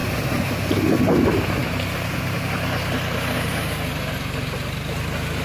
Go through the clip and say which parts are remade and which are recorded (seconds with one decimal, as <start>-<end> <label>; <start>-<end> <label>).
0.0-5.4 recorded